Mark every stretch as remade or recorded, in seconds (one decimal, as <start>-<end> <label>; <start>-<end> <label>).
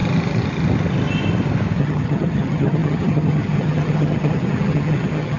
0.0-1.8 recorded; 1.8-5.4 remade